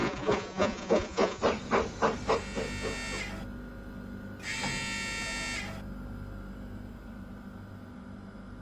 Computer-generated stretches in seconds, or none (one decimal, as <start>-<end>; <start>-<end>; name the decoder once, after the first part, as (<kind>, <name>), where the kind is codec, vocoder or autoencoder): 0.0-1.4 (vocoder, Vocos)

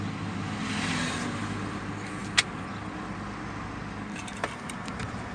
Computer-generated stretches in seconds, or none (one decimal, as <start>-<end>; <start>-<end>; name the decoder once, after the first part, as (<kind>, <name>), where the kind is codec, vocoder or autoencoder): none

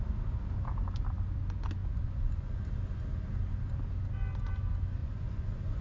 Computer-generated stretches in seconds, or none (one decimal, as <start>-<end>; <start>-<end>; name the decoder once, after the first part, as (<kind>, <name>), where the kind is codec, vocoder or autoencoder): 1.8-2.7 (vocoder, Vocos); 5.0-5.8

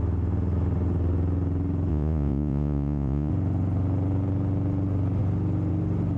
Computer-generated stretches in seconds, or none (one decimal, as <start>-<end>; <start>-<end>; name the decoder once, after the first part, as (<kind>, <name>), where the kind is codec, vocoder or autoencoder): 1.9-3.3 (vocoder, Vocos)

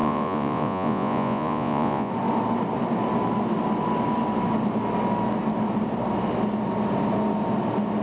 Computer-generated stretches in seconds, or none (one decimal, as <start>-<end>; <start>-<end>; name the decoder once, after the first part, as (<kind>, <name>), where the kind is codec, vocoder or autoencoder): 0.0-2.1 (vocoder, Vocos)

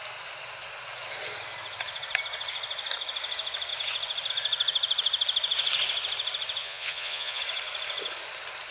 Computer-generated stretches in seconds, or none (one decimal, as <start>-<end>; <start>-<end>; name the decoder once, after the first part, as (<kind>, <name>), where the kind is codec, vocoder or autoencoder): 6.6-7.4 (vocoder, Vocos)